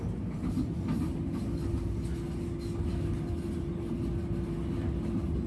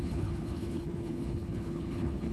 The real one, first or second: first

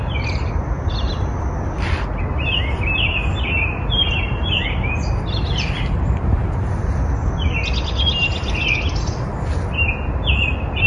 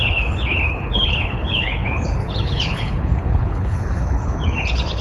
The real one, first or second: first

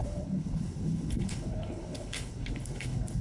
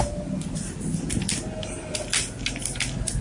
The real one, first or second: second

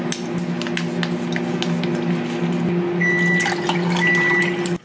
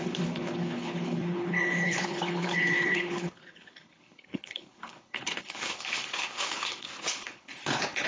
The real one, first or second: first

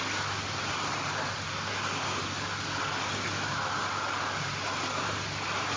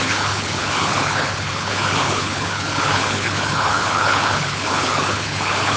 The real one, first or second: first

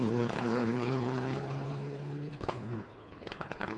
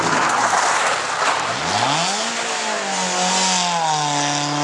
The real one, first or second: second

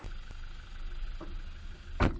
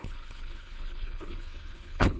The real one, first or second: first